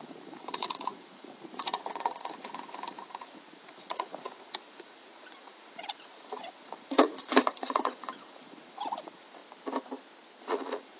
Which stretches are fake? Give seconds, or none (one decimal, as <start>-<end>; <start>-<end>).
0.0-9.4; 10.4-11.0